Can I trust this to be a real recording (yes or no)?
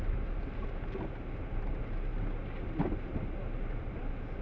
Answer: yes